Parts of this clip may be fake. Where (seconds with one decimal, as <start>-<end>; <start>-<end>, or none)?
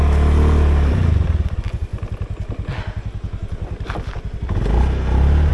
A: none